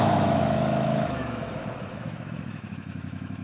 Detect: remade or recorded remade